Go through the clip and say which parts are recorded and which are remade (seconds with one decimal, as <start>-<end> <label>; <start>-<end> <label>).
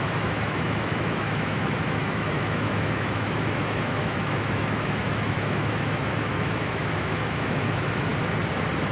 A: 0.0-8.1 remade; 8.1-8.9 recorded